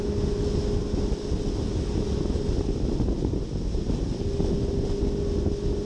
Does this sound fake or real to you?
real